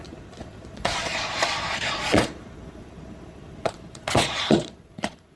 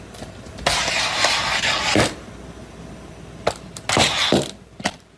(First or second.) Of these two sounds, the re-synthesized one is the first